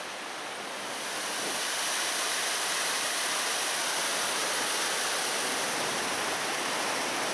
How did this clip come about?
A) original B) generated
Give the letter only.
A